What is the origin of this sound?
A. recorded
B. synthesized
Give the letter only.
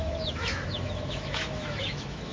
B